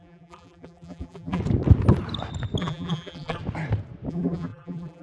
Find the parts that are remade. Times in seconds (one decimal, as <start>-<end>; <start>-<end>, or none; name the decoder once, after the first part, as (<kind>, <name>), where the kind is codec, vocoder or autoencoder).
0.0-1.4 (vocoder, BigVGAN v2); 2.6-3.4; 4.1-5.0